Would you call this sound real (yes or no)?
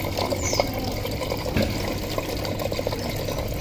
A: yes